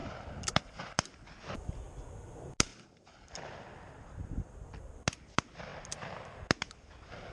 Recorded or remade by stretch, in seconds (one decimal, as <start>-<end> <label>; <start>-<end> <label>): 0.0-0.6 remade; 0.6-2.7 recorded; 2.7-4.9 remade; 4.9-7.3 recorded